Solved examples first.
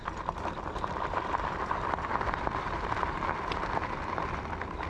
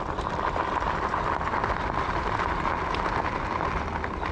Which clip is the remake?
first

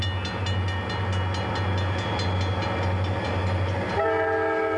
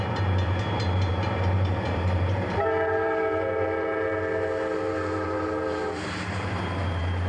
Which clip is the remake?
second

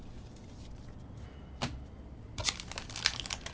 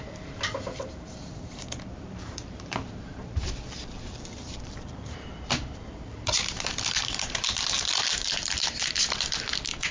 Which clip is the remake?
second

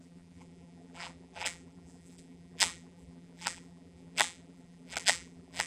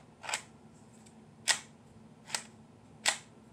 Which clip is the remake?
first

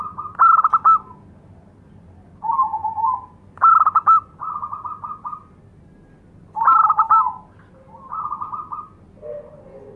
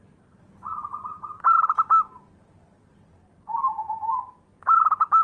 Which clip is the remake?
second